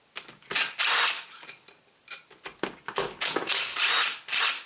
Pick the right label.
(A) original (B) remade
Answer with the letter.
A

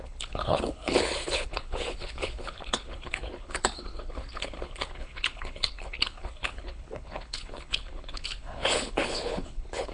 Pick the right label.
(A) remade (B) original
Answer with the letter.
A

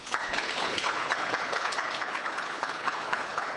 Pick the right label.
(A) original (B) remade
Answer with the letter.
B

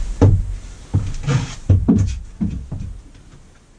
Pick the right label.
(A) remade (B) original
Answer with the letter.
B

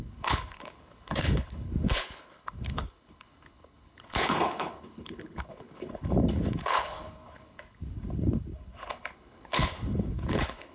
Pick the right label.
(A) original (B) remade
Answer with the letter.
B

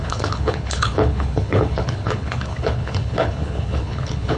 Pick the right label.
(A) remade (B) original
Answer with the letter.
A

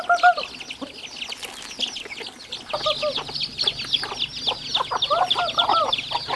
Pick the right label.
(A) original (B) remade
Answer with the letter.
A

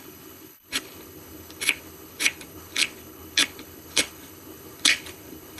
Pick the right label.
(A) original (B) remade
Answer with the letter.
B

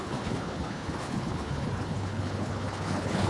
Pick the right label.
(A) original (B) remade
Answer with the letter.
B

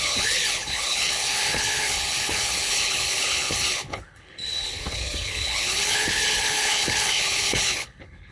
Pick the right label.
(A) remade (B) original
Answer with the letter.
A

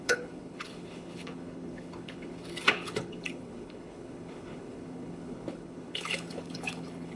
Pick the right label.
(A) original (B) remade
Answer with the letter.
B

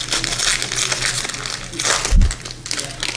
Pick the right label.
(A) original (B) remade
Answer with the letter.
A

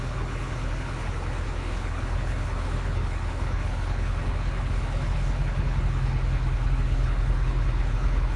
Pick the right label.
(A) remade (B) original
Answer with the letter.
A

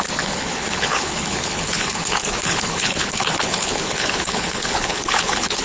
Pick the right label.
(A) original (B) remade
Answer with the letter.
B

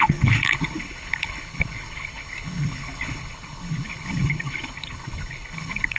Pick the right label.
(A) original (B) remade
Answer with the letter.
B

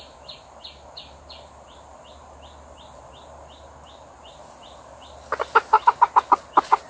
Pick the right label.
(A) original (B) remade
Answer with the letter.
A